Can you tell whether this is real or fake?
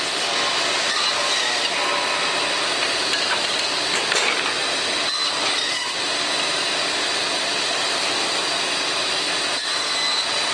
real